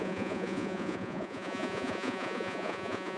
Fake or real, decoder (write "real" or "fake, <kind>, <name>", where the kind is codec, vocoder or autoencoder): fake, vocoder, Vocos